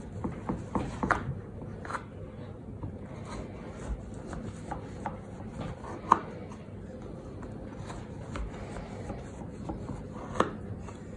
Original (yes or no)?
yes